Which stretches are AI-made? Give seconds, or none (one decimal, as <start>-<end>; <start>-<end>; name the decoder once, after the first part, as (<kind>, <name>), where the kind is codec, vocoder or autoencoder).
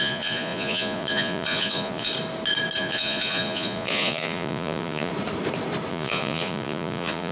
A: 0.0-2.1 (vocoder, Vocos); 2.8-5.1; 5.9-7.3